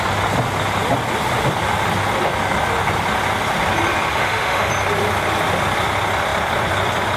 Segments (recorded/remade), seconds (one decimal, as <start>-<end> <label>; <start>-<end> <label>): 0.0-4.1 recorded; 4.1-4.7 remade; 4.7-7.2 recorded